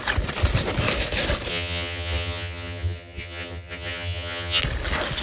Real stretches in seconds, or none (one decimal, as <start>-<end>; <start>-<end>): 0.0-1.5; 4.6-5.2